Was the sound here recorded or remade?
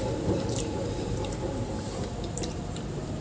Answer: remade